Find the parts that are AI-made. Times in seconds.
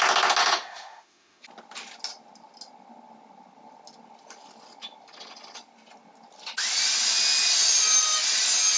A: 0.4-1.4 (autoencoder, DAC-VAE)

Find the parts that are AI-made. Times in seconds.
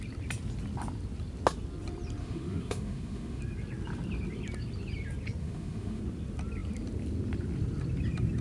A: 2.2-3.4 (autoencoder, DAC-VAE); 5.4-6.0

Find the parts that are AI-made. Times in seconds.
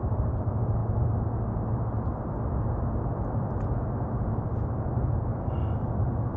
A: none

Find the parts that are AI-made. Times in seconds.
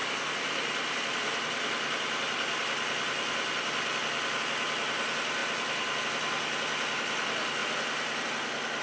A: none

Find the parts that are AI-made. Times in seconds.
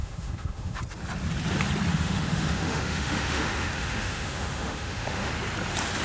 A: 0.0-0.8 (autoencoder, DAC-VAE); 1.9-5.3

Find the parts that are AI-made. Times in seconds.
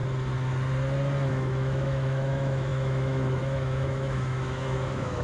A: 1.3-5.2 (autoencoder, DAC-VAE)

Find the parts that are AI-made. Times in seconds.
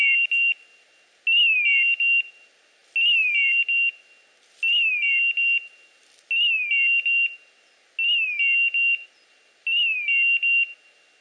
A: none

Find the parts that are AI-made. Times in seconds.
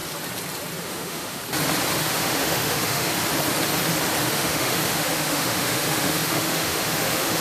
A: 0.8-1.4 (autoencoder, DAC-VAE); 2.0-3.1; 4.2-7.4